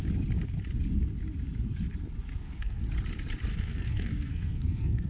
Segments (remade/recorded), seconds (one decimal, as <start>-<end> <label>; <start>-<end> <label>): 0.0-2.3 recorded; 2.3-2.8 remade; 2.8-3.5 recorded; 3.5-5.1 remade